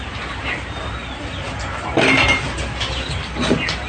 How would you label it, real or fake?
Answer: fake